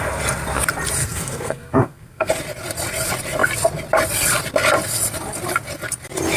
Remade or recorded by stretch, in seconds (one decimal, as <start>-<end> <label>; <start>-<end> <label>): 0.0-1.0 recorded; 1.0-2.3 remade; 2.3-6.4 recorded